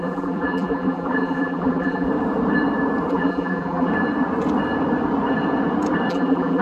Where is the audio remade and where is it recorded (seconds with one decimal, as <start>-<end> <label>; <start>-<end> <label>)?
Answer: 0.0-2.1 remade; 2.1-3.1 recorded; 3.1-3.9 remade; 3.9-6.1 recorded; 6.1-6.6 remade